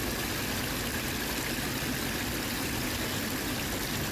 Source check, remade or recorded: recorded